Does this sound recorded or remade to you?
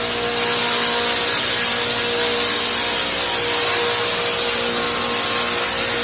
recorded